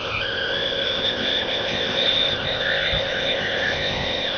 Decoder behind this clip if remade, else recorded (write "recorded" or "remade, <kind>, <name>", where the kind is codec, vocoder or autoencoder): remade, codec, ZipCodec